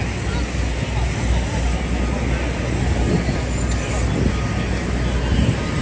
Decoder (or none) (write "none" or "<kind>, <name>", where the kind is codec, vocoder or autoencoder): none